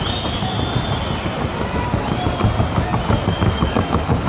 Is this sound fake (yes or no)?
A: no